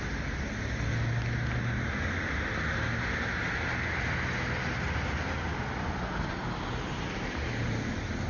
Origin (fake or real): real